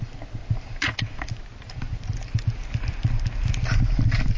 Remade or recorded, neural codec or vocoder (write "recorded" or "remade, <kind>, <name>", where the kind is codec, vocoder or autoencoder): recorded